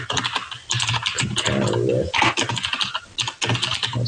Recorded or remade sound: recorded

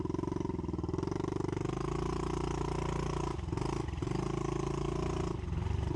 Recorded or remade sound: recorded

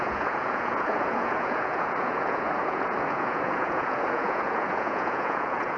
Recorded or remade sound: remade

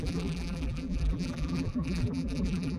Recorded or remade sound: remade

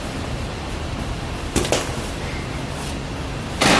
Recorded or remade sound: remade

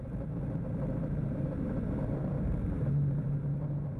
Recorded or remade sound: remade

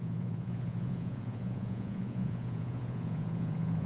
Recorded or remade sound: remade